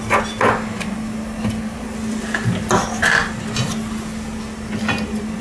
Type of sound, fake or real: real